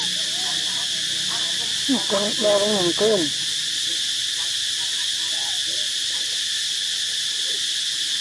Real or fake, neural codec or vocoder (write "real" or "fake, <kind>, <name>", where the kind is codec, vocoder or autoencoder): real